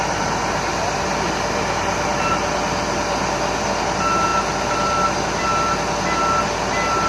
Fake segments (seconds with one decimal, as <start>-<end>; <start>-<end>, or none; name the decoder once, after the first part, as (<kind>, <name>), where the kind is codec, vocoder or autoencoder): none